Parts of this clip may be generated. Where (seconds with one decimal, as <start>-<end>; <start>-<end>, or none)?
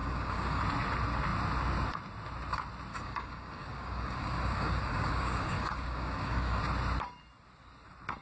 0.0-0.6; 2.9-6.6